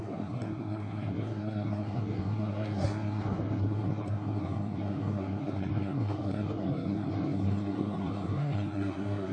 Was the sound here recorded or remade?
remade